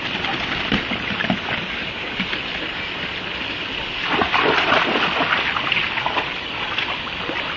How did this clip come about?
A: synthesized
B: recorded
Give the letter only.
B